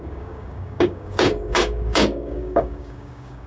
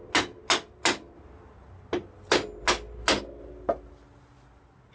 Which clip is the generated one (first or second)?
first